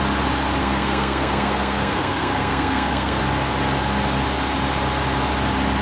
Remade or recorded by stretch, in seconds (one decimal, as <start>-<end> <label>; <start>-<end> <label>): 0.0-0.6 recorded; 0.6-3.2 remade; 3.2-5.8 recorded